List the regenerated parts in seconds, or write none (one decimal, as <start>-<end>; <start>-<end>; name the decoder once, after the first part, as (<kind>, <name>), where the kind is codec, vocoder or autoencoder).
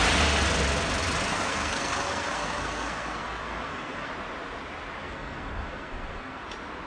1.3-4.1 (codec, SNAC); 5.0-6.4